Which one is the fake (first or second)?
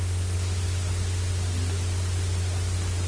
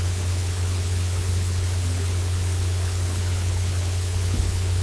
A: second